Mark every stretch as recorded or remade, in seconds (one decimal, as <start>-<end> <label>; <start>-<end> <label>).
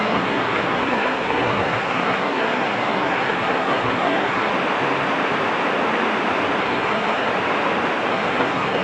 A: 0.0-4.5 remade; 4.5-6.6 recorded; 6.6-7.3 remade; 7.3-8.1 recorded; 8.1-8.8 remade